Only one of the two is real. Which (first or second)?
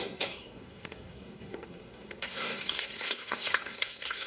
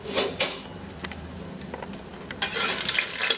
second